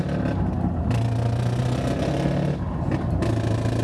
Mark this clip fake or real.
real